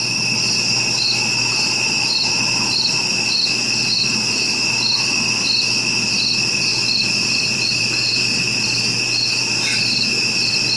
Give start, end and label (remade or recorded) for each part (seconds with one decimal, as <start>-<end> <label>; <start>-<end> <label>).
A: 0.0-6.7 recorded; 6.7-8.1 remade; 8.1-10.8 recorded